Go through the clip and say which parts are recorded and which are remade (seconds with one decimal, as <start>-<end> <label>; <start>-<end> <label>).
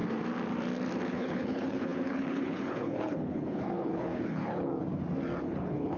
0.0-1.1 recorded; 1.1-4.7 remade; 4.7-5.4 recorded; 5.4-6.0 remade